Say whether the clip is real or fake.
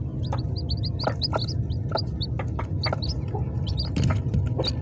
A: real